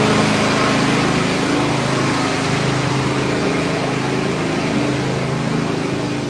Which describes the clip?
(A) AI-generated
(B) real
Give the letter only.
B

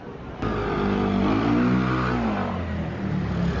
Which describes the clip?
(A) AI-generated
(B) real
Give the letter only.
B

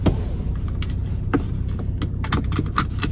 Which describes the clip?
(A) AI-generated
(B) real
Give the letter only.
B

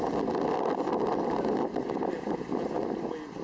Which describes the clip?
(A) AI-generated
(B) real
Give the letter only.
B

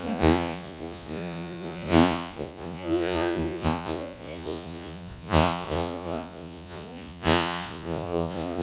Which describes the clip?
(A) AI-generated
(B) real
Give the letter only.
A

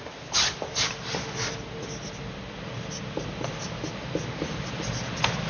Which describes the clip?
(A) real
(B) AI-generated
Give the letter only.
A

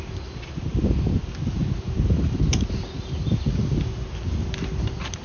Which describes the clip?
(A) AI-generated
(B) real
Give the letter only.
B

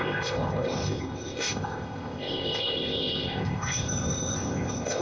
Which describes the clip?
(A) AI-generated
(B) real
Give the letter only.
A